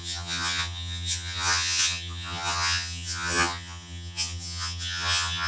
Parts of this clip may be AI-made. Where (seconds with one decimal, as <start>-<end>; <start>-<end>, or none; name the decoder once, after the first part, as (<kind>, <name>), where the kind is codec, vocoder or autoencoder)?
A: 0.0-5.5 (vocoder, HiFi-GAN)